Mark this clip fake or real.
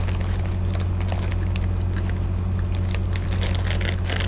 real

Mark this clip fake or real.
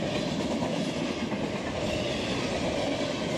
real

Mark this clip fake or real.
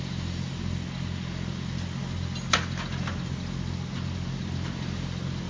real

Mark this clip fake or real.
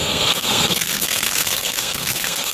fake